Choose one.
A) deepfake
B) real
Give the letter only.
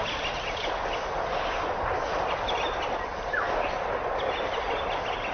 B